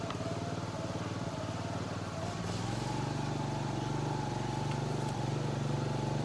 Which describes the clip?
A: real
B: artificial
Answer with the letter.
A